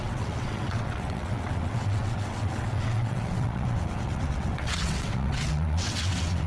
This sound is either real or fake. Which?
fake